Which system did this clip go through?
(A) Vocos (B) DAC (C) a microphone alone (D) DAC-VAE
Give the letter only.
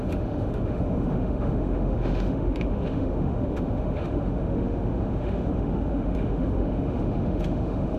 D